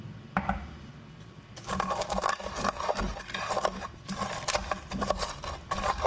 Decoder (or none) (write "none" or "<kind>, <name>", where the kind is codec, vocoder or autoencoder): none